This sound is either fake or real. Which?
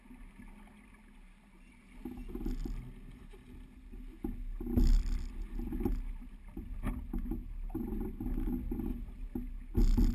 real